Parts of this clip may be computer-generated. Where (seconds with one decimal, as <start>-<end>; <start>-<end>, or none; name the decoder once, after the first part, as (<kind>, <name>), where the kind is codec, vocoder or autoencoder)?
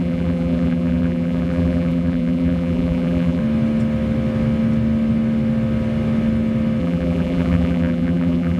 0.0-3.4 (vocoder, BigVGAN v2); 6.8-8.6